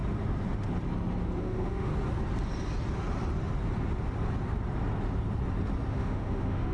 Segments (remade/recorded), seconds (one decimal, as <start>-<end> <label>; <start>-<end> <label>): 0.0-1.4 recorded; 1.4-1.9 remade; 1.9-5.9 recorded; 5.9-6.7 remade